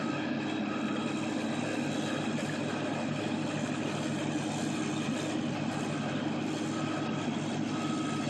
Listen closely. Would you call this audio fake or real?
real